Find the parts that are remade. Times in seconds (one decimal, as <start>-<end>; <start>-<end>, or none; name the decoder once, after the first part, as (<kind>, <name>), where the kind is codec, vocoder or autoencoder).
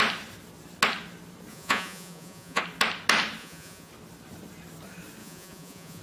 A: 1.5-2.6 (vocoder, Vocos); 3.4-3.9; 5.2-6.0